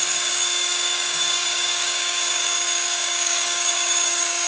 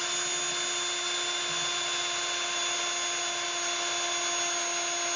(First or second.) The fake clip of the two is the first